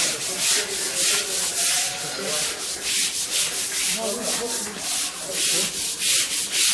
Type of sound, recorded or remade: recorded